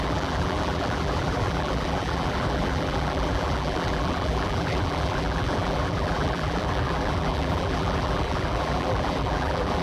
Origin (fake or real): fake